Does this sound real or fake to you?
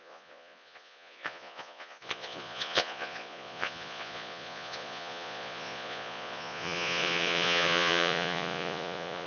fake